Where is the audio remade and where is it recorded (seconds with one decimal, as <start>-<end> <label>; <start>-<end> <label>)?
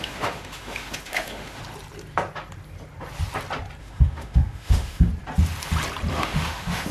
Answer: 0.0-1.6 remade; 1.6-3.8 recorded; 3.8-5.1 remade; 5.1-6.1 recorded; 6.1-6.9 remade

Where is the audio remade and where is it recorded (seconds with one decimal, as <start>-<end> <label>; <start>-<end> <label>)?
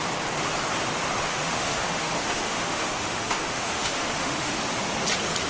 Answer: 0.0-1.3 recorded; 1.3-4.6 remade; 4.6-5.5 recorded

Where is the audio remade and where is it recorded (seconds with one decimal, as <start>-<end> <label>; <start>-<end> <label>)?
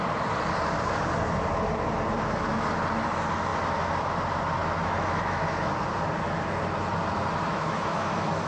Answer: 0.0-4.6 recorded; 4.6-5.7 remade; 5.7-7.5 recorded; 7.5-8.1 remade; 8.1-8.5 recorded